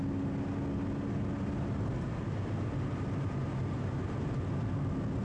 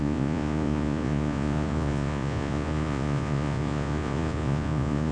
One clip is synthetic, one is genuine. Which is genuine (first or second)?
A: first